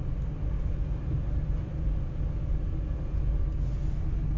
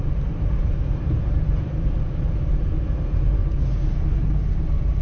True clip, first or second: first